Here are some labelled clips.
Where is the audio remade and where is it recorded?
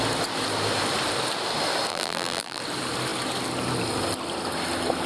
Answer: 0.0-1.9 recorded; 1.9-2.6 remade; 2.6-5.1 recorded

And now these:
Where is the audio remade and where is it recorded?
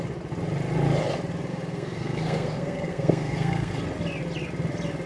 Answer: 0.0-1.5 recorded; 1.5-3.8 remade; 3.8-5.1 recorded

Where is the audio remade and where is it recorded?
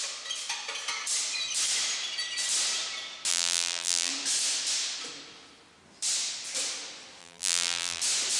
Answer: 0.0-3.3 recorded; 3.3-4.1 remade; 4.1-7.2 recorded; 7.2-8.0 remade; 8.0-8.4 recorded